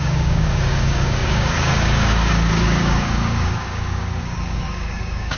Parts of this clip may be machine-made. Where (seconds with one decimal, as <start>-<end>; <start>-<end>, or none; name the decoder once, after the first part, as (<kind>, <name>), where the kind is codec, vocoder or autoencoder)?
0.0-5.4 (codec, DAC)